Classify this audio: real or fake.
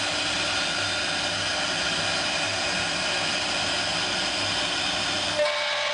real